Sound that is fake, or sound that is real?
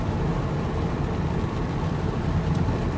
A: real